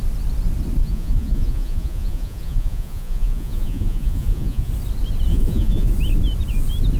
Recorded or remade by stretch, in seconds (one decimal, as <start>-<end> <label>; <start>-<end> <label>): 0.0-0.8 recorded; 0.8-4.7 remade; 4.7-5.3 recorded; 5.3-5.9 remade; 5.9-7.0 recorded